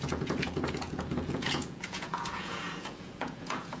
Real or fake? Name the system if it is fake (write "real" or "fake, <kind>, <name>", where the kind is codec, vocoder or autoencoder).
fake, vocoder, Vocos